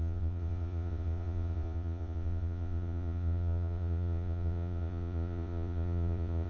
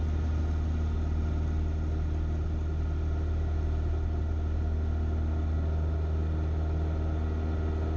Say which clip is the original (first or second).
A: second